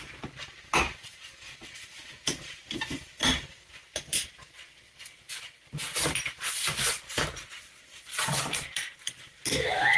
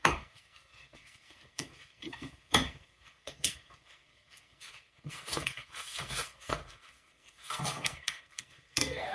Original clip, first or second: first